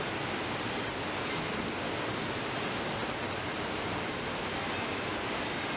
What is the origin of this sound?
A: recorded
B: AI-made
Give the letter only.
A